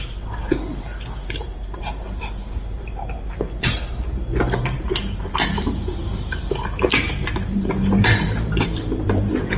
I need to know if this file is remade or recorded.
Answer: remade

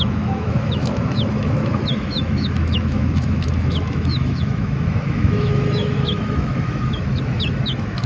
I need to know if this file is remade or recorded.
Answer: remade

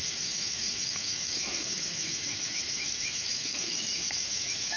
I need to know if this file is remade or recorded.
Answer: remade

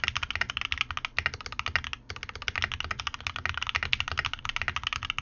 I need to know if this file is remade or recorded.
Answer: recorded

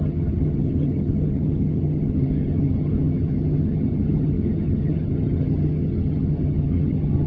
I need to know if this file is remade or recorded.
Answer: remade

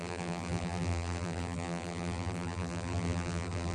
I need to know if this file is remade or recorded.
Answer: remade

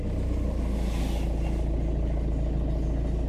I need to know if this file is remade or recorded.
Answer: recorded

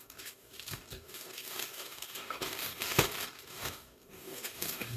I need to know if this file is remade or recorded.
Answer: remade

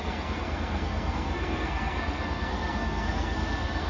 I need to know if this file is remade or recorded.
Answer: remade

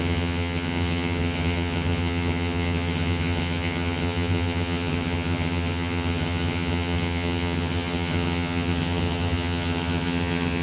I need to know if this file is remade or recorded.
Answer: remade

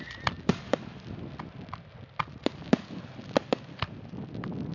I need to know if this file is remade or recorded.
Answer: recorded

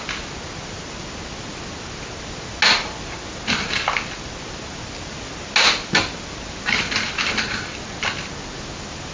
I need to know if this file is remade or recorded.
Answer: recorded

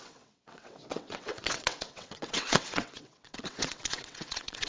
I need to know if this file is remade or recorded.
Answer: remade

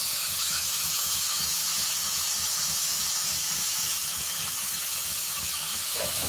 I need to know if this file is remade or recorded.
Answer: remade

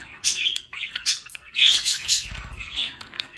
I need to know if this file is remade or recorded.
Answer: remade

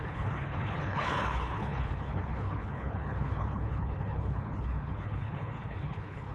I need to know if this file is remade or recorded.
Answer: remade